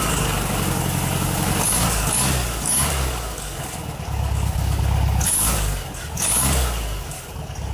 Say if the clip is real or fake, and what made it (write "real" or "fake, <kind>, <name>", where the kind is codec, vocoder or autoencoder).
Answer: fake, codec, DAC